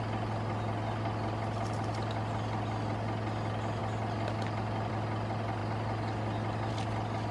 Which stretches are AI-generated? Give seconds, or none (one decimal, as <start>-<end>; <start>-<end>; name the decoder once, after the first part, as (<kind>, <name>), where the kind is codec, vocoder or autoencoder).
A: none